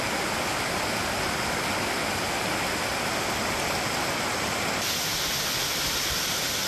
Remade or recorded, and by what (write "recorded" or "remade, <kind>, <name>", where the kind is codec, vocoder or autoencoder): recorded